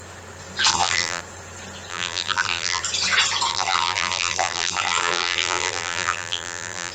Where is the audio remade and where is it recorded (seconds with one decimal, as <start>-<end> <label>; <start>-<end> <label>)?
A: 0.0-0.7 recorded; 0.7-1.2 remade; 1.2-1.9 recorded; 1.9-2.8 remade; 2.8-3.5 recorded; 3.5-6.9 remade